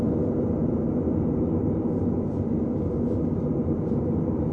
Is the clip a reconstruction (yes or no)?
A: no